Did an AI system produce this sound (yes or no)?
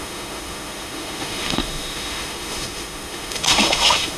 yes